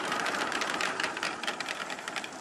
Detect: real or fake fake